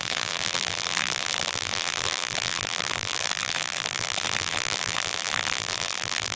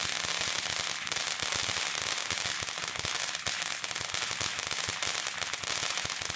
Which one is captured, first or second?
second